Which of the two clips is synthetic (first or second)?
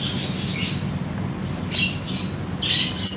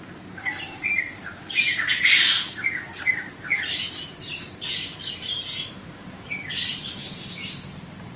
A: second